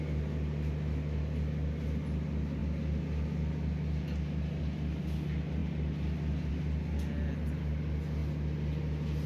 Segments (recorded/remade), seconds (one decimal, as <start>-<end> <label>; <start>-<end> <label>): 0.0-9.3 recorded